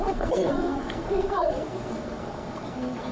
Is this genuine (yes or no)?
no